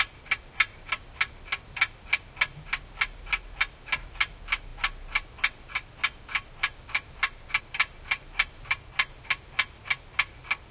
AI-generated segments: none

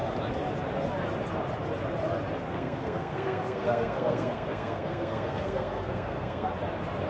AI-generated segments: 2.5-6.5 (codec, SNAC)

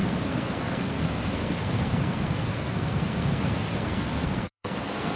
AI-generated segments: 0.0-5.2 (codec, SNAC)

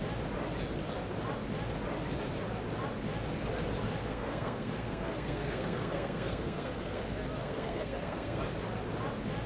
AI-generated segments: 4.0-7.0 (codec, SNAC); 7.4-8.4